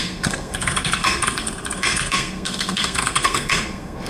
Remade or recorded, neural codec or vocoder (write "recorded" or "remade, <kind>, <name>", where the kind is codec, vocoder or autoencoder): remade, codec, SNAC